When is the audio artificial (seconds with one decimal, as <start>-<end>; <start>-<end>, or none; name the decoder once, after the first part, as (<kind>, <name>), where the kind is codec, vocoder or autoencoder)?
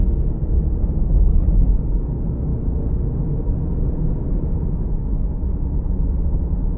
none